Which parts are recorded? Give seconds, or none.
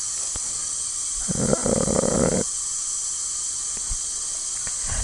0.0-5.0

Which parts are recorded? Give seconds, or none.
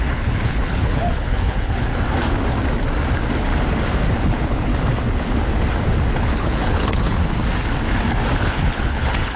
1.9-4.2; 4.7-6.1; 7.2-8.3